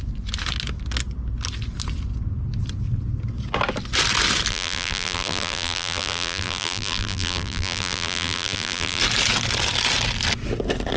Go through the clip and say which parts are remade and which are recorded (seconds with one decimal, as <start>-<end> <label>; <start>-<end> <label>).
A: 0.0-4.5 recorded; 4.5-9.0 remade; 9.0-11.0 recorded